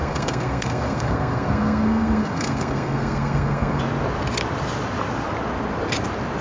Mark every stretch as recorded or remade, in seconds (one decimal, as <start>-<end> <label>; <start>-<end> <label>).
0.0-3.8 remade; 3.8-6.4 recorded